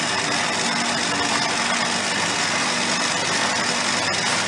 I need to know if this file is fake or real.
real